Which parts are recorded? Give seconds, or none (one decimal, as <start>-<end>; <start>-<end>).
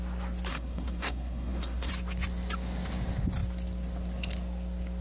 0.0-0.5; 1.9-5.0